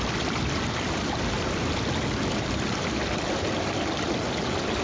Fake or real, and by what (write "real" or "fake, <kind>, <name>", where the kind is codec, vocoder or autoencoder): real